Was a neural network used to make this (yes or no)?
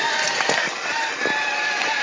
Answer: no